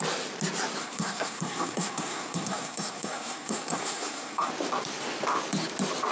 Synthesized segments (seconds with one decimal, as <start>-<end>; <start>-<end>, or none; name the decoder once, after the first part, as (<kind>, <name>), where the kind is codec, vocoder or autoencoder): 0.8-4.5 (codec, SNAC)